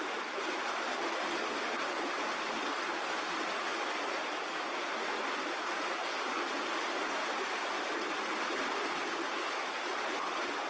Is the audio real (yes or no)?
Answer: yes